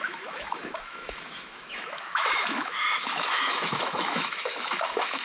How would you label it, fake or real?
fake